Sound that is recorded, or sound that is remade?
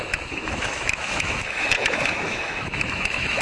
remade